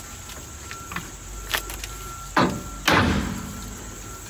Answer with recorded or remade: recorded